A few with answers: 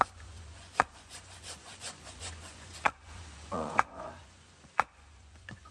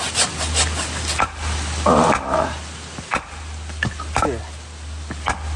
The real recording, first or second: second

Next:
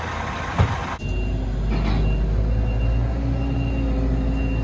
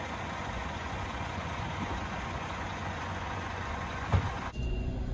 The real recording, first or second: first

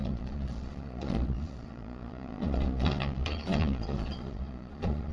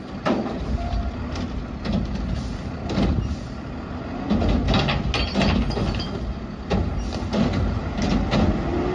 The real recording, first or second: second